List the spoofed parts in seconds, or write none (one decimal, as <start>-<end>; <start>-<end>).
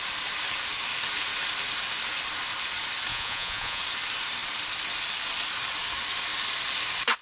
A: 3.1-3.8